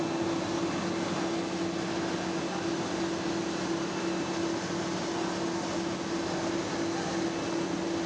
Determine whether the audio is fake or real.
real